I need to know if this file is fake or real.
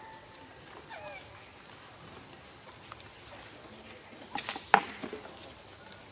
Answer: real